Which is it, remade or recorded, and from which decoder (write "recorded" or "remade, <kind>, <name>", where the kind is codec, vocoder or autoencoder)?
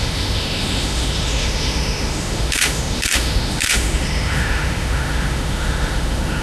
remade, autoencoder, DAC-VAE